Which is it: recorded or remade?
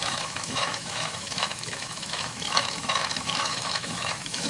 remade